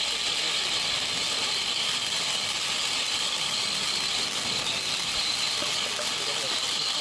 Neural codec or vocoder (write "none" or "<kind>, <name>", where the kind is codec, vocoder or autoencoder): none